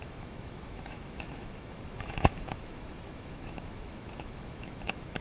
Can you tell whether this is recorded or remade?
remade